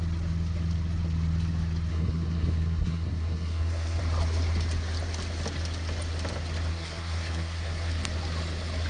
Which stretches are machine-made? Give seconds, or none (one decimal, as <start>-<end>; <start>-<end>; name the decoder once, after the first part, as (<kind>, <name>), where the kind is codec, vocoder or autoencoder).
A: 1.9-4.0 (codec, SNAC); 6.7-7.9